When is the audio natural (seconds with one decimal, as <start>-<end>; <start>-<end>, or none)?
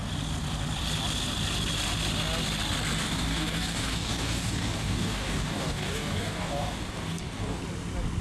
0.0-3.0; 7.6-8.2